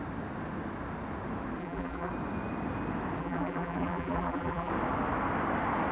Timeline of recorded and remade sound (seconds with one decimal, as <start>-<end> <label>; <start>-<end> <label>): 0.0-1.6 recorded; 1.6-2.1 remade; 2.1-3.2 recorded; 3.2-4.7 remade; 4.7-5.9 recorded